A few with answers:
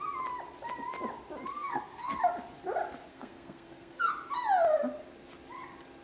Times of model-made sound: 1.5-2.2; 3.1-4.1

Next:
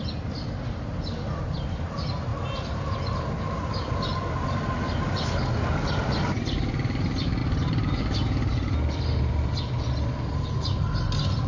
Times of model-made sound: 7.4-8.0